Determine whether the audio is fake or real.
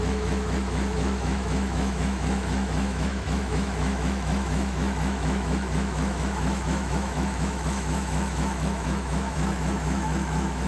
fake